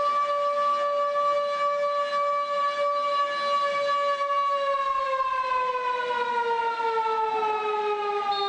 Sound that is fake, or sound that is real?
real